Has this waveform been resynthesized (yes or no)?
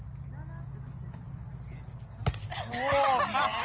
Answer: no